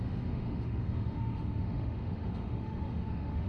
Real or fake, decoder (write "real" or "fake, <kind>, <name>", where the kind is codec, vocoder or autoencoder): fake, autoencoder, DAC-VAE